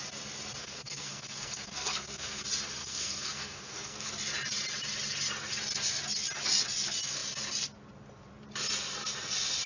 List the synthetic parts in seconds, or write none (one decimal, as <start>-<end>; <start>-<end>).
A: 0.6-2.4; 2.8-4.1